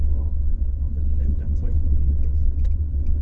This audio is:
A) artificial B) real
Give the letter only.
A